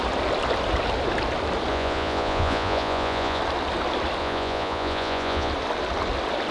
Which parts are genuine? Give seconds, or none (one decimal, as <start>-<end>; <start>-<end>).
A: 0.0-1.7; 3.4-4.2; 5.5-6.5